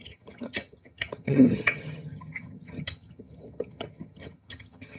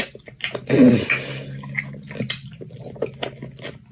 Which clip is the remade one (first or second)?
first